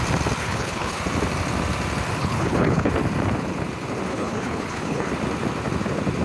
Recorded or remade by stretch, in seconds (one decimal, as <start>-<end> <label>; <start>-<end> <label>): 0.0-0.4 recorded; 0.4-1.0 remade; 1.0-2.2 recorded; 2.2-2.9 remade; 2.9-4.1 recorded; 4.1-5.1 remade; 5.1-6.2 recorded